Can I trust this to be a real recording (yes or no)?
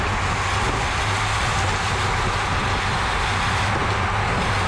yes